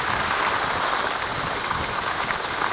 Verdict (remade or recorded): recorded